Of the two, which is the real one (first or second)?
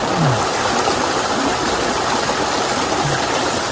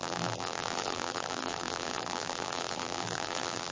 first